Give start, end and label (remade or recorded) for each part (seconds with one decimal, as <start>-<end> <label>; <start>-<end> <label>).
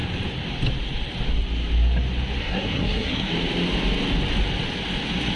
0.0-2.4 recorded; 2.4-3.3 remade; 3.3-5.4 recorded